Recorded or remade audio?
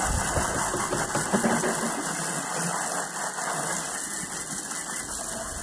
recorded